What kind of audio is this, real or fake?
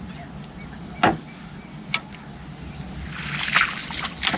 real